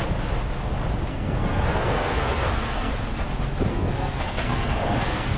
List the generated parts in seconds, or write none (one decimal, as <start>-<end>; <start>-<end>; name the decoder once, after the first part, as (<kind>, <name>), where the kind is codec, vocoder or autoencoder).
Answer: 1.1-2.9 (codec, SNAC); 3.7-5.4

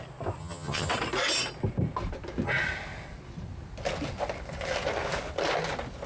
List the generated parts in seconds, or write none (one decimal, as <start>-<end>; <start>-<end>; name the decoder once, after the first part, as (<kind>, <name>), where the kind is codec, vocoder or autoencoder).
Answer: 0.4-0.9 (vocoder, HiFi-GAN)

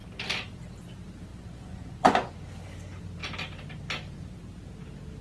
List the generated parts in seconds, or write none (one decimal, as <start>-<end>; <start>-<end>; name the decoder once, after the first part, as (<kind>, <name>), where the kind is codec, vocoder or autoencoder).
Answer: 1.3-2.3 (vocoder, Vocos)

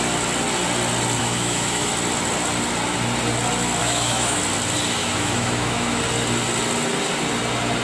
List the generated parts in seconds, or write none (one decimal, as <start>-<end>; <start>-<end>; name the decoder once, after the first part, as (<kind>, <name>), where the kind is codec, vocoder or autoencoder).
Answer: 1.2-1.9 (autoencoder, DAC-VAE); 3.8-4.4; 5.0-6.0

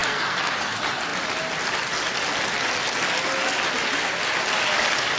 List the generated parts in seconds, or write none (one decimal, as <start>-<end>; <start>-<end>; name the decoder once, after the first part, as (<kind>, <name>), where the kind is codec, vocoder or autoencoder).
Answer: 0.0-0.5 (codec, SNAC)

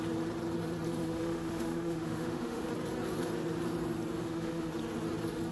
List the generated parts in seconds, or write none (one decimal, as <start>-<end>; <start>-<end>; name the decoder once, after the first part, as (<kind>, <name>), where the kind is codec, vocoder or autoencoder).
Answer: 1.0-2.7 (autoencoder, DAC-VAE); 4.2-4.7

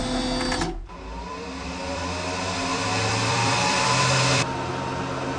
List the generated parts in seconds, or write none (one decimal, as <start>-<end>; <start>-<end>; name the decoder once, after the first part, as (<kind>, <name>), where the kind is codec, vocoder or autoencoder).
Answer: 1.2-2.0 (vocoder, BigVGAN v2); 2.7-4.7